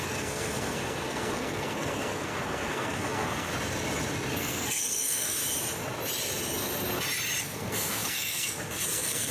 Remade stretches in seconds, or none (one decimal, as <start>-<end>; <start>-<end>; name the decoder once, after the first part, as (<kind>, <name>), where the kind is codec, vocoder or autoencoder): 0.0-3.5 (codec, SNAC); 4.3-5.4; 7.4-9.3